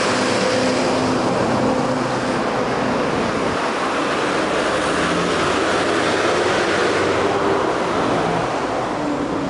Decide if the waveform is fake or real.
real